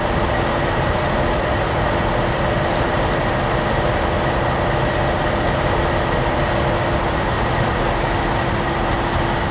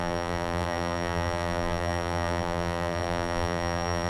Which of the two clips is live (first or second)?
first